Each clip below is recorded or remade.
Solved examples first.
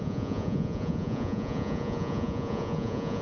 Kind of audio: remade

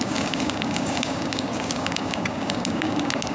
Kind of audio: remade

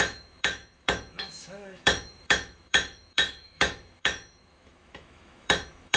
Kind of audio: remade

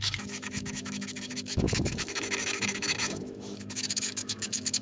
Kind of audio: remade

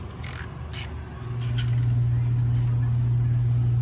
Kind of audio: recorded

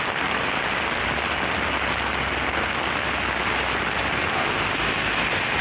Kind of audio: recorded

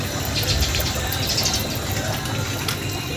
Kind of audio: recorded